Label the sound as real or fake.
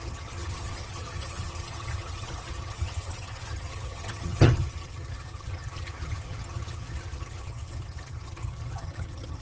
fake